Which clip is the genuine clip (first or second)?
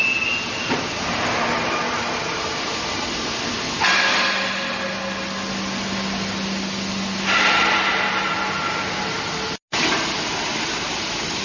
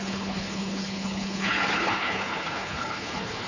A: first